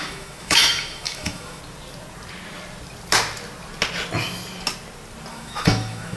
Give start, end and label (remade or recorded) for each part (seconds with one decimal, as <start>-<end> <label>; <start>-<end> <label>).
0.0-1.6 remade; 1.6-5.3 recorded; 5.3-6.2 remade